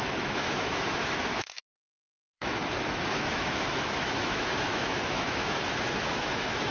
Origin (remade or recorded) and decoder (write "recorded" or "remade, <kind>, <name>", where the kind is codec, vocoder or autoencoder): remade, autoencoder, DAC-VAE